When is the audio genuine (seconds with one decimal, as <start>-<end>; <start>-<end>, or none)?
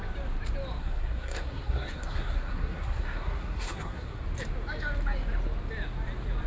0.0-0.8; 4.2-6.5